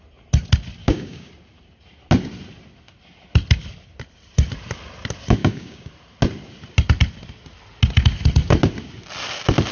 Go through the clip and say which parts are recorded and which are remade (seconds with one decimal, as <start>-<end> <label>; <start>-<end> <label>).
0.0-0.8 recorded; 0.8-1.3 remade; 1.3-5.4 recorded; 5.4-5.9 remade; 5.9-9.7 recorded